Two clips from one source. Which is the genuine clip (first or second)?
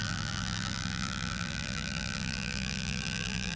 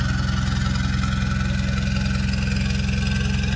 second